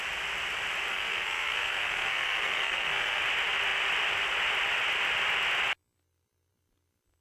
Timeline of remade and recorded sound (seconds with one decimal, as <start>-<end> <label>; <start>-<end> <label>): 0.0-0.9 recorded; 0.9-3.2 remade; 3.2-7.2 recorded